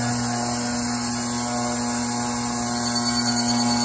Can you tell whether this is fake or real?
real